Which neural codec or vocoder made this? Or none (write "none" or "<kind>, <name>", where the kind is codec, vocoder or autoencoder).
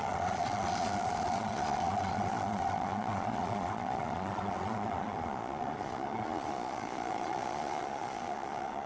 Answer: vocoder, Vocos